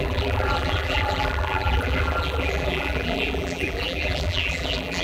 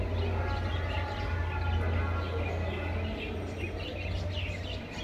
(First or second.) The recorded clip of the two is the second